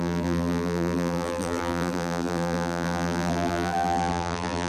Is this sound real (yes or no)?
no